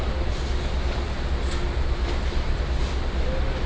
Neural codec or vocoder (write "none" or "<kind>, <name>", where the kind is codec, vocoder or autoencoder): none